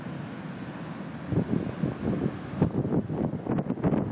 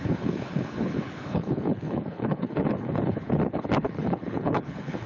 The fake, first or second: second